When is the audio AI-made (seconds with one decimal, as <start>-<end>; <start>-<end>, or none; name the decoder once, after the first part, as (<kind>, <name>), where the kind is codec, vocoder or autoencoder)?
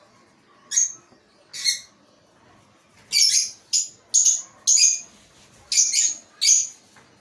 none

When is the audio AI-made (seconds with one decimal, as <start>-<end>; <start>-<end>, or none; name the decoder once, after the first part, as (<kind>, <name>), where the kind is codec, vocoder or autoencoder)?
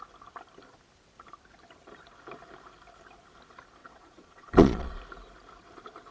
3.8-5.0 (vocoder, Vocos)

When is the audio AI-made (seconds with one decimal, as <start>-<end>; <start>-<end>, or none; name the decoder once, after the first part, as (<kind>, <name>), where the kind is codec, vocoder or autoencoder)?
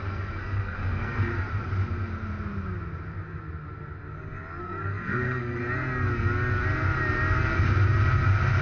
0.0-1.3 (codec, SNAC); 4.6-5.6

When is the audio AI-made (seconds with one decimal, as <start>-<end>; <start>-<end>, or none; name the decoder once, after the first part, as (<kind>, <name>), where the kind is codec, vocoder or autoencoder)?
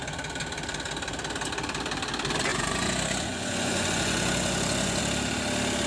2.5-5.0 (vocoder, Vocos)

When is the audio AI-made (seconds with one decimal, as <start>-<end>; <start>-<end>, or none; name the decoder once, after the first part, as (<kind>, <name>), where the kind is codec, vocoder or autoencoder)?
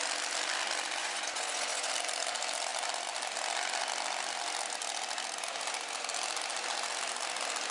1.0-1.9 (vocoder, Vocos)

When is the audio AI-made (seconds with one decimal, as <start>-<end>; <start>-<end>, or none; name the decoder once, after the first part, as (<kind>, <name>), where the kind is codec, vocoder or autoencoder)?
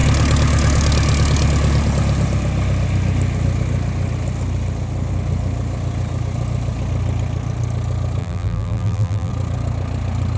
8.2-9.3 (vocoder, BigVGAN v2)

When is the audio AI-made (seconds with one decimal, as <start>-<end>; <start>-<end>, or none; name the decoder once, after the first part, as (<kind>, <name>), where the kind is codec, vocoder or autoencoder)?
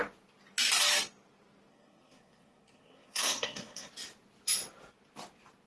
1.7-3.9 (codec, SNAC)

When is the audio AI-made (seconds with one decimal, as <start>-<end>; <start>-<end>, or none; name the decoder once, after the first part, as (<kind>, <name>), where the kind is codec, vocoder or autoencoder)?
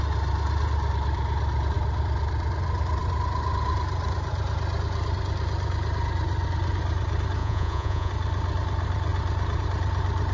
7.4-8.1 (vocoder, Vocos)